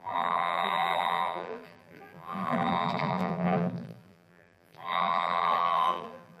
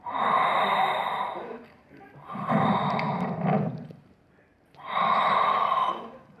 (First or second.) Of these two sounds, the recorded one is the second